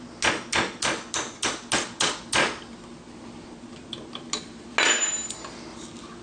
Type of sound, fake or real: real